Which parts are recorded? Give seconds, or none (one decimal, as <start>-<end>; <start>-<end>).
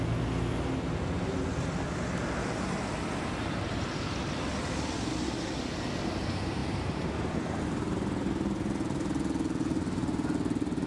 0.0-10.9